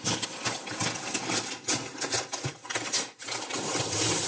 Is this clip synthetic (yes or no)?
no